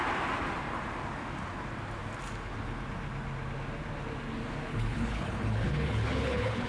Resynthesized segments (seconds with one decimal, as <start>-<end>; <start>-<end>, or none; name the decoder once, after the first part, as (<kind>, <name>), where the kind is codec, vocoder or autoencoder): 4.7-6.7 (codec, HILCodec)